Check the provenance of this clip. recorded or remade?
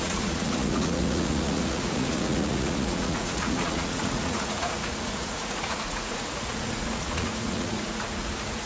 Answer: remade